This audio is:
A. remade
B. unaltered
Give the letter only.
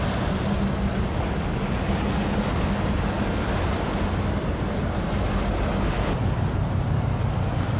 B